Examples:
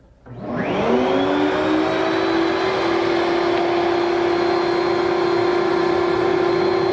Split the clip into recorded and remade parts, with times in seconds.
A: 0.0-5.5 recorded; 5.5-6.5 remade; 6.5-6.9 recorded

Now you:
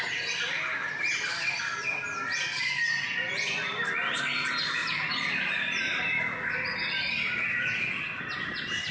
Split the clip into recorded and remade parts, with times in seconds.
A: 0.0-0.8 recorded; 0.8-1.6 remade; 1.6-4.8 recorded; 4.8-6.2 remade; 6.2-8.9 recorded

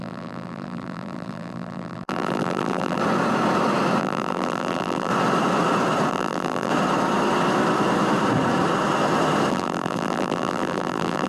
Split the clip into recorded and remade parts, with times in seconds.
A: 0.0-3.0 remade; 3.0-4.0 recorded; 4.0-5.1 remade; 5.1-6.1 recorded; 6.1-6.7 remade; 6.7-9.5 recorded; 9.5-11.3 remade

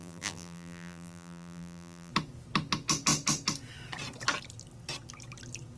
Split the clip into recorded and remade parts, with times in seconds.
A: 0.0-2.1 remade; 2.1-5.8 recorded

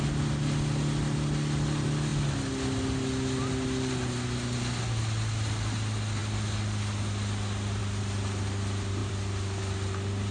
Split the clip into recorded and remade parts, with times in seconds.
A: 0.0-9.0 recorded; 9.0-9.6 remade; 9.6-10.3 recorded